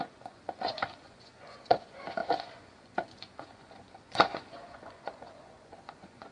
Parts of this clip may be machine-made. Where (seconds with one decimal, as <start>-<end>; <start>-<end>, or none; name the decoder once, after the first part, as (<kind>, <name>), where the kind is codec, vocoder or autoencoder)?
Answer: 0.0-6.3 (vocoder, Vocos)